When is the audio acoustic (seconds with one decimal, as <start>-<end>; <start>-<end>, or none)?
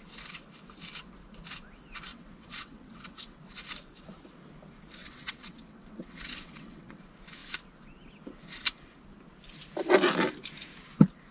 0.0-2.1; 3.4-5.0; 7.0-11.3